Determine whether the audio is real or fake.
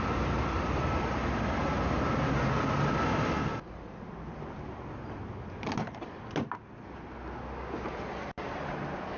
real